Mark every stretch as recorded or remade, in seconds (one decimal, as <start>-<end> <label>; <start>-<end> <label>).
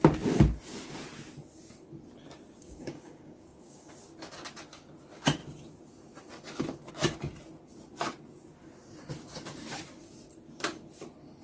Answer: 0.0-2.6 recorded; 2.6-3.9 remade; 3.9-11.4 recorded